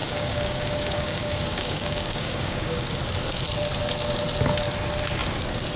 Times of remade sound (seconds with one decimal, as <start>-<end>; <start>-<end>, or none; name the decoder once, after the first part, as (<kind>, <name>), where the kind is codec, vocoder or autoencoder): 0.0-3.0 (codec, DAC)